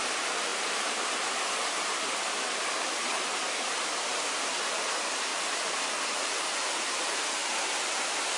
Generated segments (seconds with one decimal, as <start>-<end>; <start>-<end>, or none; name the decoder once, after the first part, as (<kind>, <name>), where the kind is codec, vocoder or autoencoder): 0.0-5.3 (vocoder, BigVGAN v2); 7.1-8.4